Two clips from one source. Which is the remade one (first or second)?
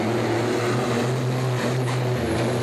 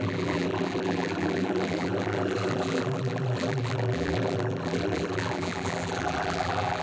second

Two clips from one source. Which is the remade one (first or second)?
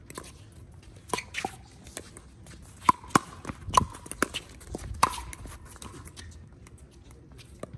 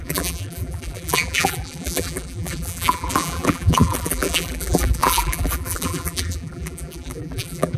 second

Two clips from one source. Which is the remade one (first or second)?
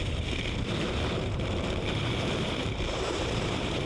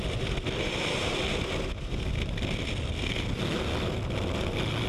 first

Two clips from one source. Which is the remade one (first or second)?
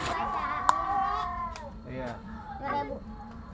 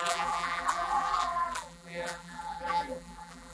second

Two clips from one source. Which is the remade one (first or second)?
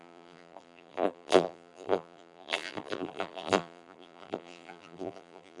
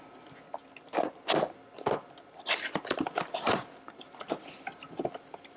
first